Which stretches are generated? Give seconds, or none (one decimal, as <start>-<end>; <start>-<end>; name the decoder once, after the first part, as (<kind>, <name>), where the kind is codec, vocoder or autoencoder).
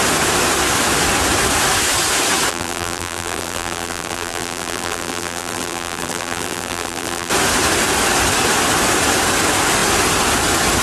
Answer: 2.5-7.3 (vocoder, BigVGAN v2)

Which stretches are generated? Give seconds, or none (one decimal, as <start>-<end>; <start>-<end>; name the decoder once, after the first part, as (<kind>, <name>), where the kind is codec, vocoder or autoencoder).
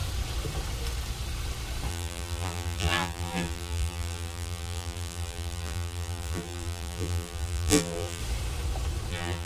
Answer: 1.9-8.2 (vocoder, BigVGAN v2); 9.1-9.5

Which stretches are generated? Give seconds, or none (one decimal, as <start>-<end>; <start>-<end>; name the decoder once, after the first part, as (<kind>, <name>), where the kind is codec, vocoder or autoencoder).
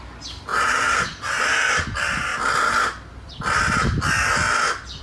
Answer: 0.5-1.7 (vocoder, BigVGAN v2)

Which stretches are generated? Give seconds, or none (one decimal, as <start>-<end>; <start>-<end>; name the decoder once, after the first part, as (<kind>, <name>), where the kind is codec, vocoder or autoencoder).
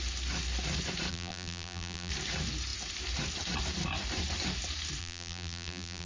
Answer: 1.1-2.1 (vocoder, BigVGAN v2); 5.0-6.1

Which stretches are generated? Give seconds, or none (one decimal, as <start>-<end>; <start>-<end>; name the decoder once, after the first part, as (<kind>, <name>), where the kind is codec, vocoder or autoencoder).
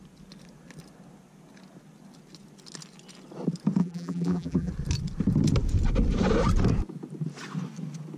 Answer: 3.8-4.7 (vocoder, BigVGAN v2)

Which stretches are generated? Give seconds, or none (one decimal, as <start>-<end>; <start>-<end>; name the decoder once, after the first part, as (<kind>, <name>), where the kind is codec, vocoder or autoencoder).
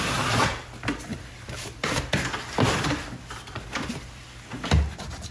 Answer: 1.1-4.3 (vocoder, BigVGAN v2)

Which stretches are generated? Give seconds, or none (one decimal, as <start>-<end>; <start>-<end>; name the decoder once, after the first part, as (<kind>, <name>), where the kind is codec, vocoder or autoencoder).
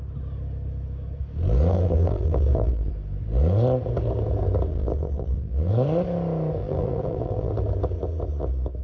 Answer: 1.7-2.9 (vocoder, BigVGAN v2); 4.7-5.7; 6.6-7.5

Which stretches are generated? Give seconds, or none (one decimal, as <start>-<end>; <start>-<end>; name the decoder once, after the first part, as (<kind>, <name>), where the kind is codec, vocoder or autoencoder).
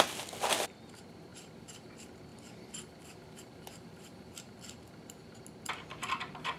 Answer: 1.3-1.9 (vocoder, BigVGAN v2); 2.3-5.4; 6.0-6.6